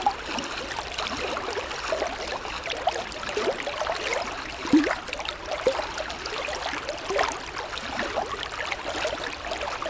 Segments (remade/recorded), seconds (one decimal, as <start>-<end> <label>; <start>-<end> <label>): 0.0-9.9 recorded